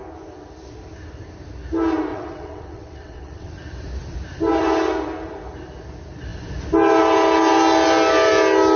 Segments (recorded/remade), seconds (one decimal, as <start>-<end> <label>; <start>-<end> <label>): 0.0-2.1 recorded; 2.1-3.5 remade; 3.5-8.8 recorded